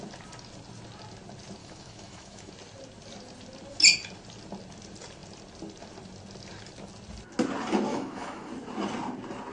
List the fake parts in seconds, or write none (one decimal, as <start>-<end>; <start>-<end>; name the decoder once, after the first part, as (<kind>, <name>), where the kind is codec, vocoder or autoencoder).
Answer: 1.6-2.5 (autoencoder, DAC-VAE); 7.9-8.5